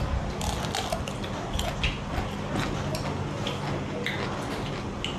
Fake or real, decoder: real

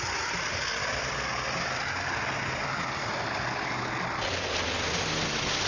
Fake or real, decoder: real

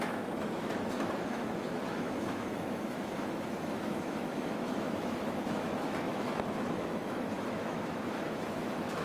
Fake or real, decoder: fake, autoencoder, DAC-VAE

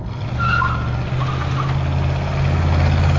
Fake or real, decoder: real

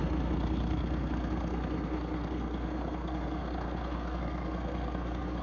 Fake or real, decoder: fake, codec, SNAC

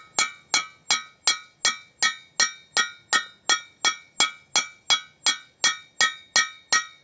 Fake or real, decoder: real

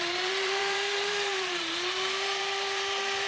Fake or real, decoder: fake, vocoder, BigVGAN v2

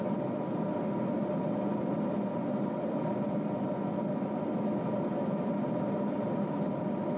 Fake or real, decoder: real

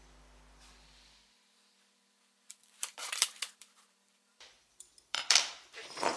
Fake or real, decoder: fake, vocoder, BigVGAN v2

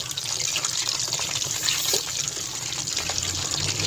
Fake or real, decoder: real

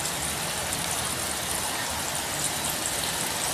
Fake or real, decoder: real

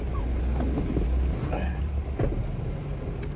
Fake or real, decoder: real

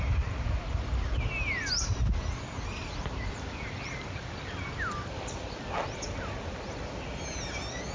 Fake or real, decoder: real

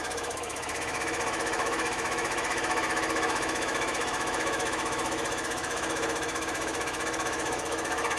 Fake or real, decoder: fake, autoencoder, DAC-VAE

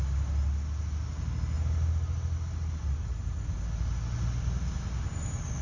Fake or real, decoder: real